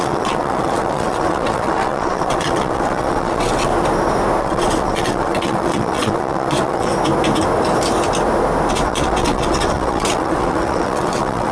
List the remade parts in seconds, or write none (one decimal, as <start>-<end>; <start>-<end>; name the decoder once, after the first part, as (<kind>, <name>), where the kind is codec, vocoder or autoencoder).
0.0-3.7 (vocoder, WaveNeXt); 4.4-6.9; 8.7-11.5